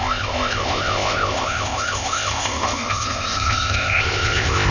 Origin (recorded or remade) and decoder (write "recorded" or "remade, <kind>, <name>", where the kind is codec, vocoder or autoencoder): remade, codec, ZipCodec